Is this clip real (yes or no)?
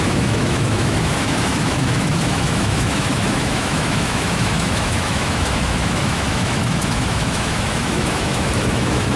no